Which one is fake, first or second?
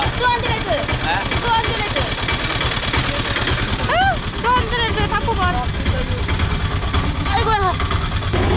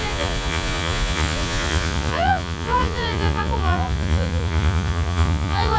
second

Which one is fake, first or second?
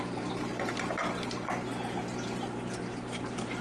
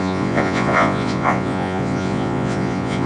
second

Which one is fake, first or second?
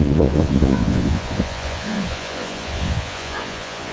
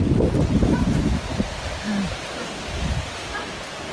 first